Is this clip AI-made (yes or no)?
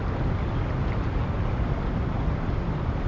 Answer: no